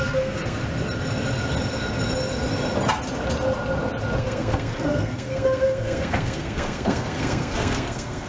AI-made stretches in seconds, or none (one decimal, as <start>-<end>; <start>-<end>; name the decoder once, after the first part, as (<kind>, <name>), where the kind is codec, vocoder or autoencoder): 0.0-0.6 (codec, SNAC); 4.2-8.3